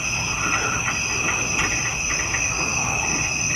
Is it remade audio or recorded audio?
recorded